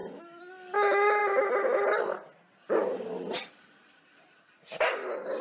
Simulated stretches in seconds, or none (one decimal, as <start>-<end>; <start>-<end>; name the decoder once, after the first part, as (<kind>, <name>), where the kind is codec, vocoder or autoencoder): none